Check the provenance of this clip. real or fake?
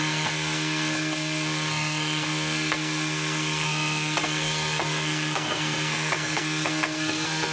fake